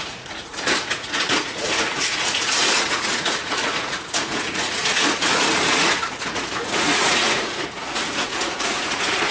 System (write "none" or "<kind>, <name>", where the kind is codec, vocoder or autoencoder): vocoder, Vocos